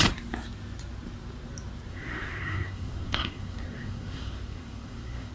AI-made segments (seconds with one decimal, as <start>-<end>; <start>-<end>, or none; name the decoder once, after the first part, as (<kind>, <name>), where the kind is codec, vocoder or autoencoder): 1.9-5.3 (codec, SNAC)